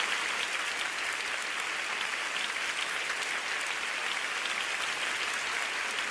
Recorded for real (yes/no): yes